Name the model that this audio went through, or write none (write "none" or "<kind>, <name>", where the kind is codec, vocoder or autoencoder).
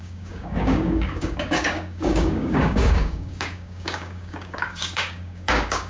codec, DAC